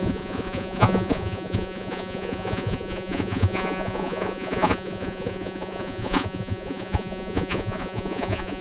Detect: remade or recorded remade